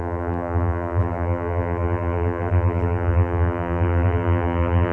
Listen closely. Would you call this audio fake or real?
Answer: fake